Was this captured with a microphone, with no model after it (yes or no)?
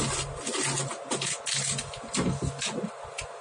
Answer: yes